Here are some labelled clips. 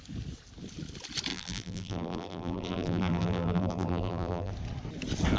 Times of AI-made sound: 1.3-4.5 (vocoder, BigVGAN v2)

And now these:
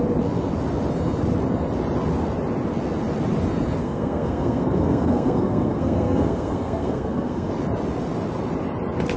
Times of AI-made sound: 3.8-7.5 (codec, SNAC)

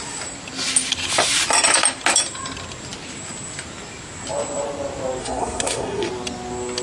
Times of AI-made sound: 5.2-6.1 (codec, SNAC)

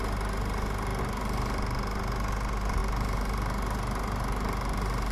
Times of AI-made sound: none

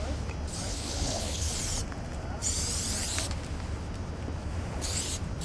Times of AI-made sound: 0.7-1.5 (codec, HILCodec)

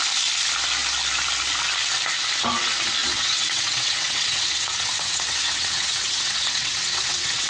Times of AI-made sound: 3.0-7.5 (vocoder, WaveNeXt)

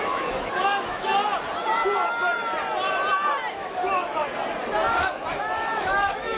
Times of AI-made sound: 0.0-1.1 (autoencoder, DAC-VAE); 3.5-4.2; 5.0-6.4